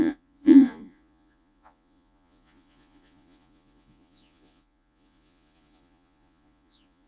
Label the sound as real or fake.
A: fake